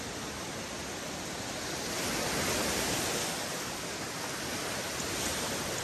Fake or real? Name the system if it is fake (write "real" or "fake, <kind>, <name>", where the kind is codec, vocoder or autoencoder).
real